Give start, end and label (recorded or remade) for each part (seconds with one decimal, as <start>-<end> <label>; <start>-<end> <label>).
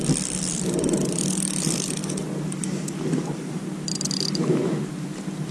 0.0-5.5 recorded